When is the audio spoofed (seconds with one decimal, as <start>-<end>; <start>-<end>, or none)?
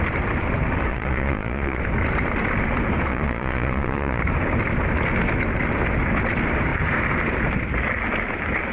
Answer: 0.9-1.8; 3.1-4.2